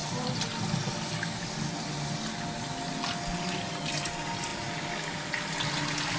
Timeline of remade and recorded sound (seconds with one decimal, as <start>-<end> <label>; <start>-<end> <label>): 0.0-6.2 recorded